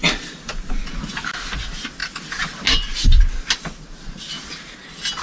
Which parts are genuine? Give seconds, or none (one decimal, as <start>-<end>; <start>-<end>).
0.7-5.2